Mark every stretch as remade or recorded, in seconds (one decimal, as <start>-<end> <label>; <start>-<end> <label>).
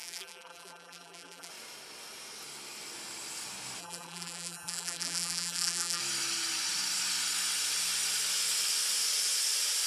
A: 0.0-1.5 remade; 1.5-3.8 recorded; 3.8-6.0 remade; 6.0-9.9 recorded